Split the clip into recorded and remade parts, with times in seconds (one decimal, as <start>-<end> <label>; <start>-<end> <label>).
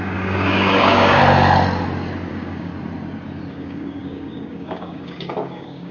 0.0-1.2 remade; 1.2-2.3 recorded; 2.3-2.7 remade; 2.7-3.5 recorded; 3.5-5.9 remade